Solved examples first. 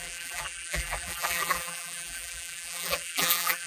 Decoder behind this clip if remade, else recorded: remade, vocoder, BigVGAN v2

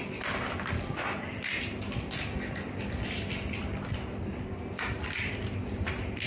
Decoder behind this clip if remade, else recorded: recorded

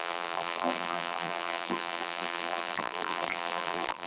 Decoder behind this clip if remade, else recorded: remade, vocoder, BigVGAN v2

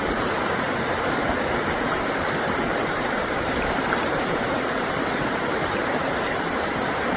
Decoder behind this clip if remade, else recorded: remade, vocoder, BigVGAN v2